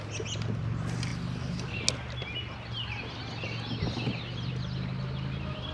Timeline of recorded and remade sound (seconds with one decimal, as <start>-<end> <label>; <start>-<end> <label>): 0.0-5.7 recorded